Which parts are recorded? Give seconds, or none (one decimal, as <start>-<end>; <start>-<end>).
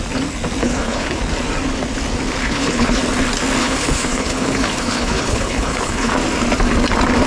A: 0.0-0.6; 1.2-2.4; 3.0-3.6; 6.1-7.3